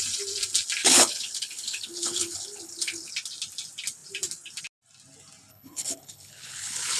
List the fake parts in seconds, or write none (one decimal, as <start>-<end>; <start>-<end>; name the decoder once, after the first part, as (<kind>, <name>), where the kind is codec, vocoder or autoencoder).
0.8-3.1 (codec, HILCodec); 5.5-7.0